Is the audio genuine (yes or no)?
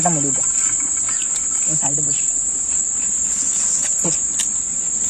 yes